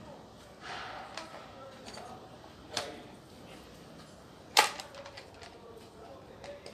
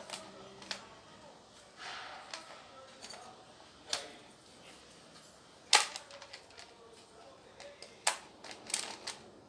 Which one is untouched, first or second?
second